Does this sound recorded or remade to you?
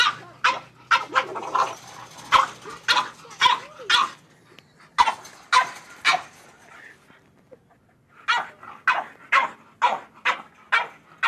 recorded